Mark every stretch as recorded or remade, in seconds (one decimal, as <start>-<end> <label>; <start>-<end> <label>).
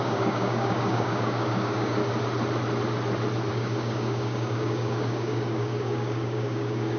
0.0-2.0 remade; 2.0-3.5 recorded; 3.5-7.0 remade